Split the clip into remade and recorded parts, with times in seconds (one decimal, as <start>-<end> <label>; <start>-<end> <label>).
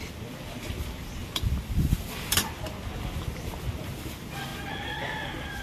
0.0-1.2 recorded; 1.2-2.4 remade; 2.4-5.6 recorded